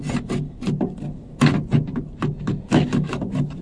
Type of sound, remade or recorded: recorded